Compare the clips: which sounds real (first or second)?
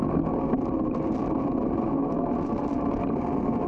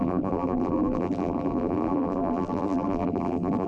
first